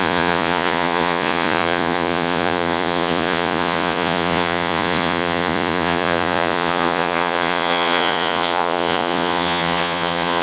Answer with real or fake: fake